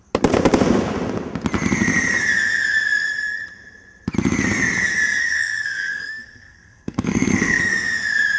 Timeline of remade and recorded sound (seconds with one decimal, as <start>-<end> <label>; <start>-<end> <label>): 0.0-5.2 recorded; 5.2-7.7 remade; 7.7-8.4 recorded